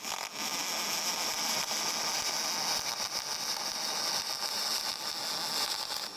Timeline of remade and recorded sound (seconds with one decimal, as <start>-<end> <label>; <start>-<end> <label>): 0.0-6.2 recorded